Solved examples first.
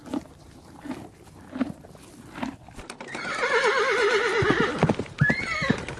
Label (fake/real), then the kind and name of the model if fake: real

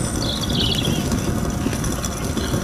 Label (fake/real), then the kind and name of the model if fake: real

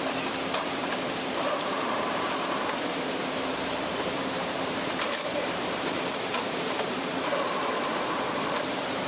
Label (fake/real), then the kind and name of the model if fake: fake, vocoder, BigVGAN v2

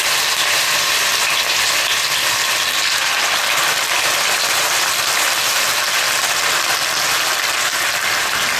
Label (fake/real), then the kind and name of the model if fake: real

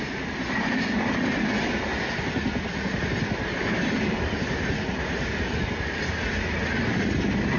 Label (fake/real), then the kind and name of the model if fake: real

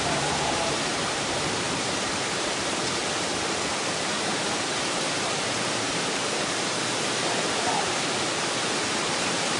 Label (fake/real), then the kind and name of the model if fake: fake, vocoder, BigVGAN v2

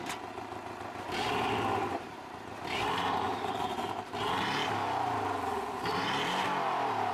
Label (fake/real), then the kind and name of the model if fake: fake, vocoder, BigVGAN v2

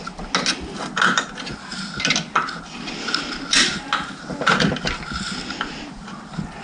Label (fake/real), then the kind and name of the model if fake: real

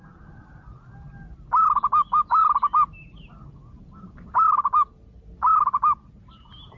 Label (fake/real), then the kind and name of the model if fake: real